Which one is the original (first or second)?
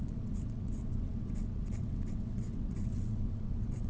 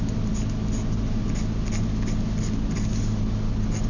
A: second